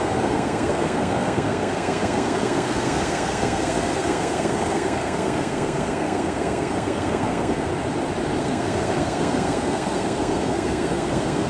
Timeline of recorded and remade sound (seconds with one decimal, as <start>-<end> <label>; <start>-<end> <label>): 0.0-7.7 remade; 7.7-8.4 recorded; 8.4-11.5 remade